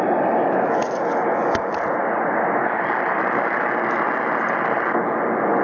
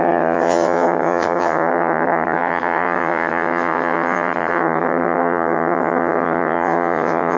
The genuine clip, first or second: first